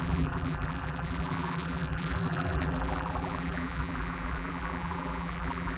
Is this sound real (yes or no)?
no